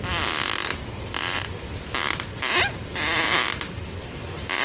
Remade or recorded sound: remade